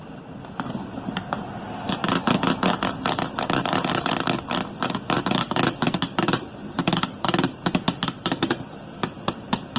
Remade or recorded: remade